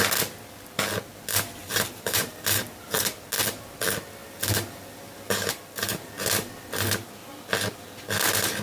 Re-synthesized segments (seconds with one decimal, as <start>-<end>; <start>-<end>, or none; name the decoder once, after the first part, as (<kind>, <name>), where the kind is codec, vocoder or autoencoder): 1.6-3.1 (vocoder, BigVGAN v2); 4.2-6.1